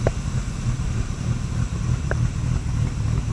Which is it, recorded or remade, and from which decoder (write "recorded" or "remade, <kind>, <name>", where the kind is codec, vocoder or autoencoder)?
remade, vocoder, BigVGAN v2